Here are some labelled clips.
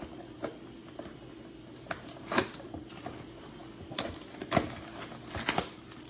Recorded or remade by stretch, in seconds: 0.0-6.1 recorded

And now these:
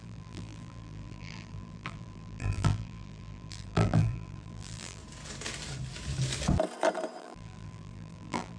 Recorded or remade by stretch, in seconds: 0.0-5.0 remade; 5.0-7.2 recorded; 7.2-8.6 remade

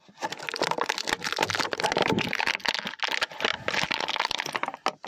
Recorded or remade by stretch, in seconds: 0.0-2.0 recorded; 2.0-2.5 remade; 2.5-5.1 recorded

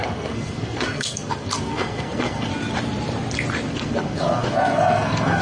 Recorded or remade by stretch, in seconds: 0.0-2.5 remade; 2.5-3.7 recorded; 3.7-5.4 remade

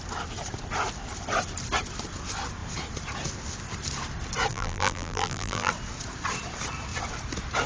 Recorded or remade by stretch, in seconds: 0.0-4.5 recorded; 4.5-5.7 remade; 5.7-7.7 recorded

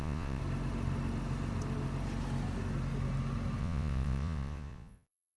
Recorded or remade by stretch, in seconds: 0.0-0.4 remade; 0.4-3.6 recorded; 3.6-5.4 remade